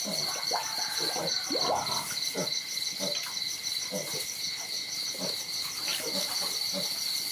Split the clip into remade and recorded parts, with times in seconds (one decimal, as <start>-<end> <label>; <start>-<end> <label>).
0.0-7.3 recorded